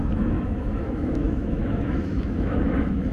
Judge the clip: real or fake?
fake